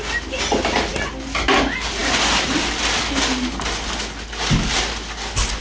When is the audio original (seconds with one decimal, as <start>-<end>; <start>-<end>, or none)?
0.0-5.6